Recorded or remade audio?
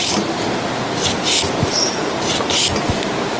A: recorded